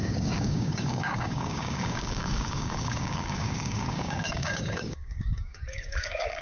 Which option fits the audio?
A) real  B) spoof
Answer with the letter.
B